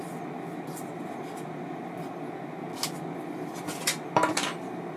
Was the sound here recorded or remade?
recorded